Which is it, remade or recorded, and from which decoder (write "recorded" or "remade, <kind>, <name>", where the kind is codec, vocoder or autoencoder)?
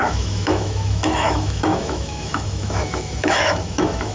remade, autoencoder, DAC-VAE